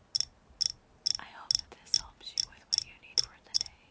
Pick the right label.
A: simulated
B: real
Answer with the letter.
B